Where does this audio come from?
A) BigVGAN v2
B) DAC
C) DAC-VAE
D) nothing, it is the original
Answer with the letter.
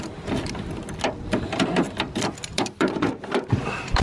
D